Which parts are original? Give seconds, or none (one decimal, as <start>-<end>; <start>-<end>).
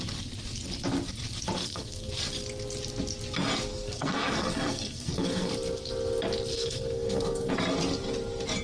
0.0-1.6; 2.1-3.7; 5.5-6.5; 7.5-8.6